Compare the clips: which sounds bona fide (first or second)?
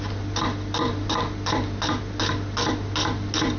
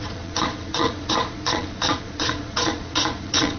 first